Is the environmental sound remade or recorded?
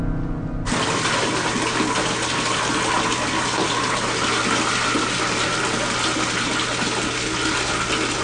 recorded